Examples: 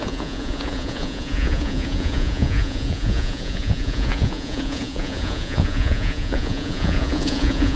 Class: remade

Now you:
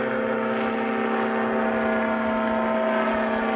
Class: recorded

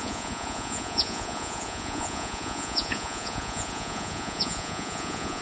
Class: remade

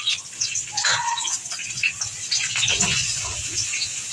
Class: remade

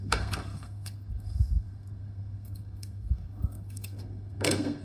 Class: remade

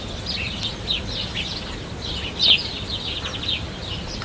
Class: recorded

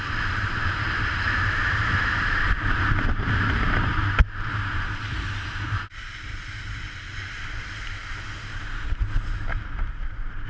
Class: recorded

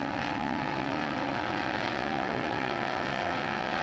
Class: remade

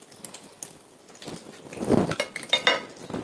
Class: recorded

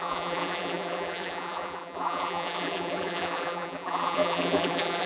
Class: remade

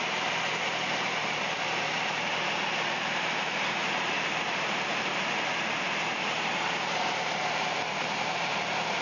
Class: remade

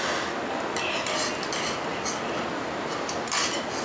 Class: recorded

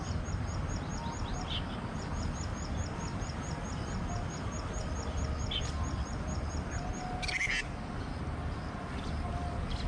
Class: recorded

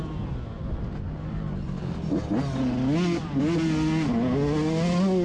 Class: recorded